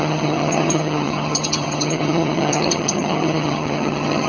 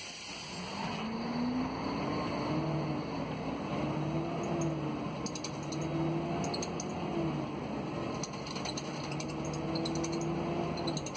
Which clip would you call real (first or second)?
second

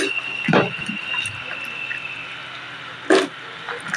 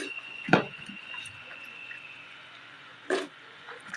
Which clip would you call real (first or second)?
first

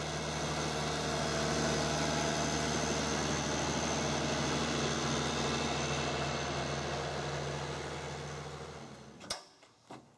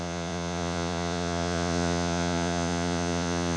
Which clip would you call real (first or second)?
first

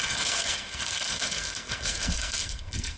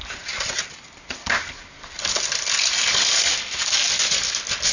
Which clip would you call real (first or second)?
second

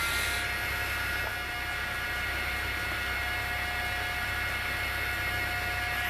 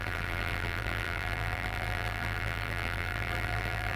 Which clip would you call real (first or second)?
first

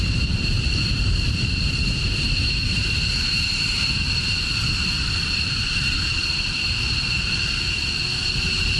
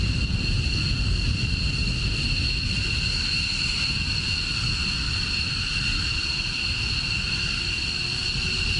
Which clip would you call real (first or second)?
second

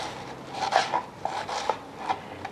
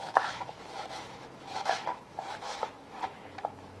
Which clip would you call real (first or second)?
first